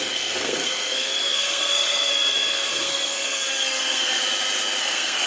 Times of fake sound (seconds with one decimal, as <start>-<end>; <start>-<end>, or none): 0.0-4.2; 4.8-5.3